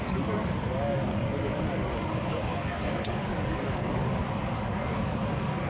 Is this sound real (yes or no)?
no